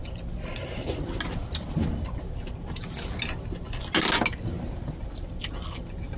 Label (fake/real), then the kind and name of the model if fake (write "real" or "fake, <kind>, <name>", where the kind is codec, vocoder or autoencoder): real